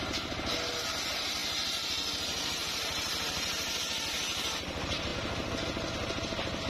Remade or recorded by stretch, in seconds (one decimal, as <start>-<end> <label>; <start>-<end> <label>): 0.0-6.7 recorded